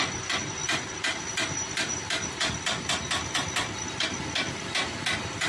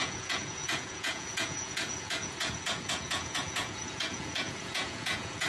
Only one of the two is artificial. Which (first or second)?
second